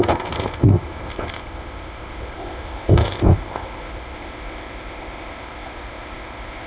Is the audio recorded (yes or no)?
no